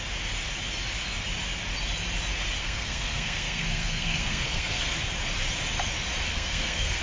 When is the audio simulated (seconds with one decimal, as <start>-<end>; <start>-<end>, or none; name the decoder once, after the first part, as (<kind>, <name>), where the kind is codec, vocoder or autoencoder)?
2.6-5.0 (codec, SNAC); 6.3-7.0